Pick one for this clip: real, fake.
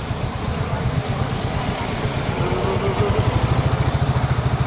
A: real